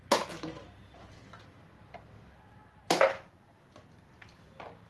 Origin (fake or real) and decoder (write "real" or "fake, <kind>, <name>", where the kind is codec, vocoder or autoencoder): real